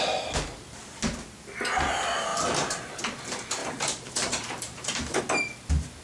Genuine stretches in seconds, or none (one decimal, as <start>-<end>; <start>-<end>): 0.0-2.3; 3.0-3.6; 5.2-6.0